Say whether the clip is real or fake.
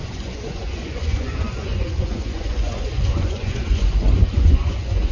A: fake